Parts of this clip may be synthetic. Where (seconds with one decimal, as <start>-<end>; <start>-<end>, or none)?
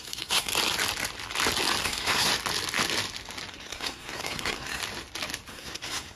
0.0-0.5; 1.8-2.3; 3.5-4.8; 5.5-6.2